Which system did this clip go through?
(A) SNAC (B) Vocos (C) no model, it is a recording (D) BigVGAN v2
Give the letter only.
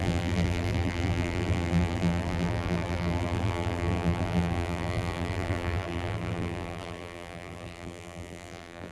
D